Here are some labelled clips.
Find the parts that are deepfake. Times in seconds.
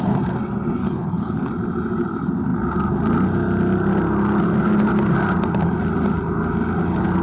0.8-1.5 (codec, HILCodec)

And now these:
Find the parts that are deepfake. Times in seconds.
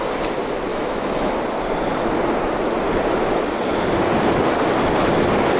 0.7-1.3 (autoencoder, DAC-VAE)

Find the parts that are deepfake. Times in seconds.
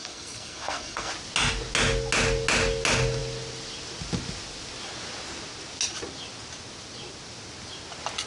0.0-1.1 (codec, SNAC)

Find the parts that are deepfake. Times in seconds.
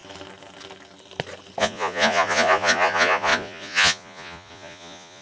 1.6-5.2 (vocoder, Vocos)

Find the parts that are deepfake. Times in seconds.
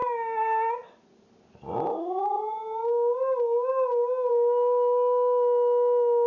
none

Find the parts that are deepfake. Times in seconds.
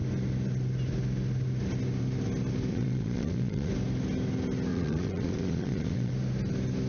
2.7-3.7 (vocoder, Vocos); 4.7-6.1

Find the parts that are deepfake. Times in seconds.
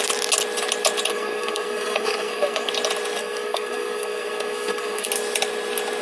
1.1-2.7 (codec, SNAC); 3.2-5.1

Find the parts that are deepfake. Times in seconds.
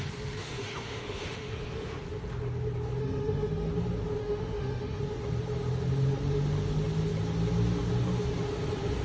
0.4-2.0 (autoencoder, DAC-VAE); 3.0-3.7; 4.2-5.0